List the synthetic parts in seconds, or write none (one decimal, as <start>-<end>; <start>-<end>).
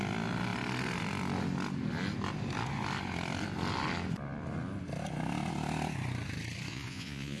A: 6.7-7.4